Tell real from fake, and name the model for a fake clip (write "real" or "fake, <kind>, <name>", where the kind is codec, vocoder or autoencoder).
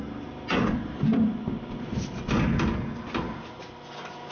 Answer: real